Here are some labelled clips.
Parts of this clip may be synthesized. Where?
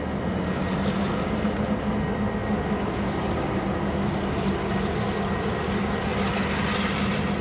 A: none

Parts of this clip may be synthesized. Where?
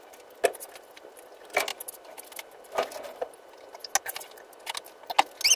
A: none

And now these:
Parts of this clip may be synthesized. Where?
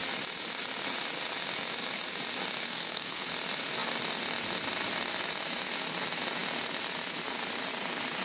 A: 2.6-3.3 (codec, SNAC)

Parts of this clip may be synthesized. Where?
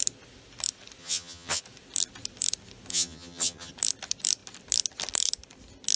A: 1.0-1.6 (vocoder, HiFi-GAN); 2.9-3.7